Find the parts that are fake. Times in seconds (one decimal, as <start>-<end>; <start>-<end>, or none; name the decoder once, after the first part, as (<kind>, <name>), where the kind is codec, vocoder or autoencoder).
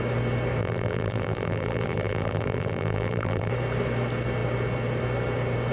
0.6-3.5 (vocoder, BigVGAN v2)